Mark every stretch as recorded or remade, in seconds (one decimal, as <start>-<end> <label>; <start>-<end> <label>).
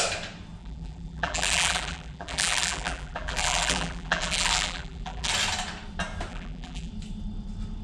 0.0-0.6 recorded; 0.6-5.3 remade; 5.3-6.3 recorded; 6.3-6.9 remade; 6.9-7.8 recorded